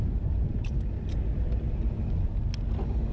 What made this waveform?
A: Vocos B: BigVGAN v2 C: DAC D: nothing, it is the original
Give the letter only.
D